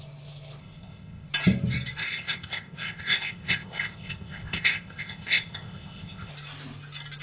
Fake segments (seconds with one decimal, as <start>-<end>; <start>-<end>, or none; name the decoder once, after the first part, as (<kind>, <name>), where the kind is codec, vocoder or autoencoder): 0.6-1.3 (codec, ZipCodec); 2.0-6.3